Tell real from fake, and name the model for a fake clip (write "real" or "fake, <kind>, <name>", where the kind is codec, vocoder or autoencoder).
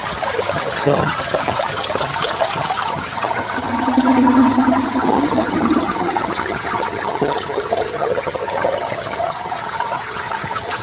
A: fake, vocoder, HiFi-GAN